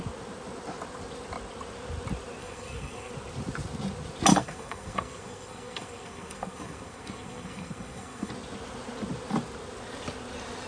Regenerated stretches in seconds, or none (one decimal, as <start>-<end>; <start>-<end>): 2.4-3.1; 4.3-8.3